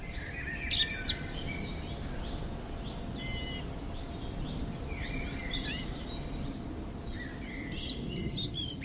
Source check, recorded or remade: recorded